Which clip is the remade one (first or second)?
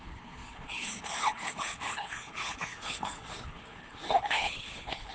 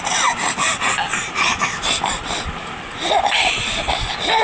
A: first